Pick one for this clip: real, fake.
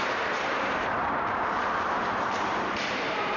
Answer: fake